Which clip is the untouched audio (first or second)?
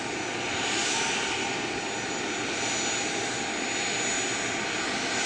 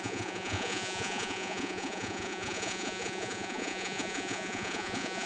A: first